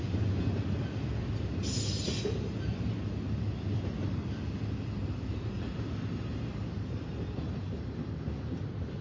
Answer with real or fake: real